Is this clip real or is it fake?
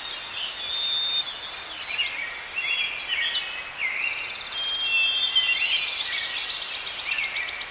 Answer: real